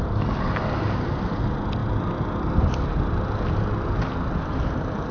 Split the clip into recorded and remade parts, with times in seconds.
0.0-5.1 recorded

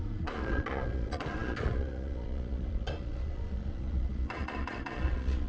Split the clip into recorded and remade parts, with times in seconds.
0.0-5.5 remade

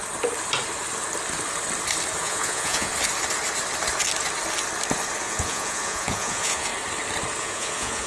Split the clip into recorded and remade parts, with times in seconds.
0.0-2.2 recorded; 2.2-2.9 remade; 2.9-5.2 recorded; 5.2-6.7 remade; 6.7-7.4 recorded; 7.4-8.1 remade

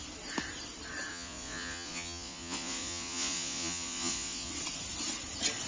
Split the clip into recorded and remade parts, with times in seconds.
0.0-1.1 recorded; 1.1-4.5 remade; 4.5-5.7 recorded

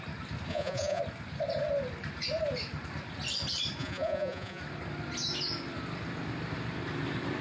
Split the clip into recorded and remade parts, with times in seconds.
0.0-0.5 recorded; 0.5-1.0 remade; 1.0-3.8 recorded; 3.8-4.6 remade; 4.6-7.4 recorded

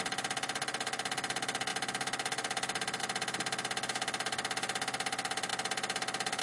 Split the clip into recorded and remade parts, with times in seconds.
0.0-6.4 recorded

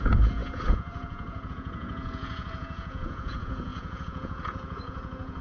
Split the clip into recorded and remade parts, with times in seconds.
0.0-5.4 remade

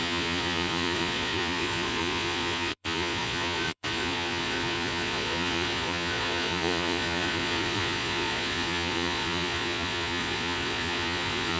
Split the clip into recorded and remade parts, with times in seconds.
0.0-11.6 remade